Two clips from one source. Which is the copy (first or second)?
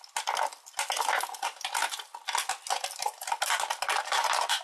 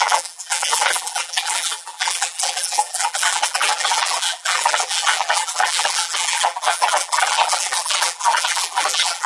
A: second